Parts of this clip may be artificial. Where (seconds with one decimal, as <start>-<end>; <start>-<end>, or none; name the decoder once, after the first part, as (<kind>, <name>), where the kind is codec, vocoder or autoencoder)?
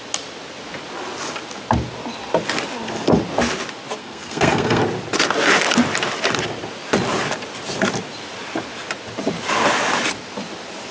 4.0-4.8 (codec, SNAC)